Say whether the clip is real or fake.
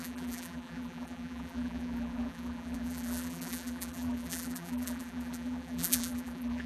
fake